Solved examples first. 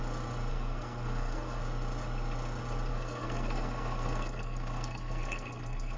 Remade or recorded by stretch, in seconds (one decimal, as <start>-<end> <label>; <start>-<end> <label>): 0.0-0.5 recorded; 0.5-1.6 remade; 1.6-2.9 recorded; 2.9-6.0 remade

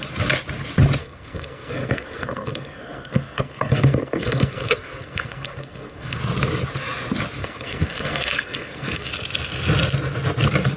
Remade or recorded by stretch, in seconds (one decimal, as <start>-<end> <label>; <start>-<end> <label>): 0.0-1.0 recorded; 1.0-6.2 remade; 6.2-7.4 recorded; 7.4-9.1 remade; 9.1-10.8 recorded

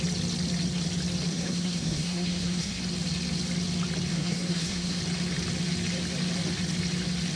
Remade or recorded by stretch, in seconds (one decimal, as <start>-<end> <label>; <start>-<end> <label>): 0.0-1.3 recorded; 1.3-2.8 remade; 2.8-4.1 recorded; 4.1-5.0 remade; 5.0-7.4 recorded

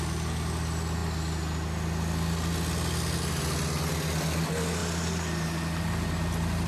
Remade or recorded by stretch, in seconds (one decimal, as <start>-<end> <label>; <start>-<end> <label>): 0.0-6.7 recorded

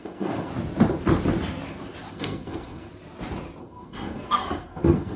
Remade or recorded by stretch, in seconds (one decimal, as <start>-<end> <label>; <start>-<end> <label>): 0.0-0.5 remade; 0.5-2.1 recorded; 2.1-2.9 remade; 2.9-3.6 recorded; 3.6-5.2 remade

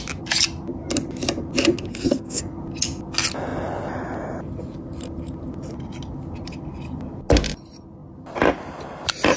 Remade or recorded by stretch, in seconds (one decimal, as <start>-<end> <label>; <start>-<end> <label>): 0.0-1.9 recorded; 1.9-2.4 remade; 2.4-9.4 recorded

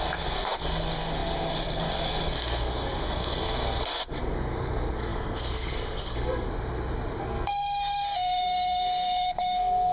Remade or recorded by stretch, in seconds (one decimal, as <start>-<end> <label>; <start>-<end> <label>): 0.0-6.5 remade; 6.5-7.2 recorded; 7.2-9.9 remade